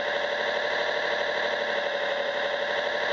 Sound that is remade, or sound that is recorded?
recorded